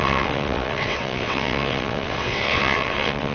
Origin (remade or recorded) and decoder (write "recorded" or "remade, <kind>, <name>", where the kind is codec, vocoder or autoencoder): remade, vocoder, WaveNeXt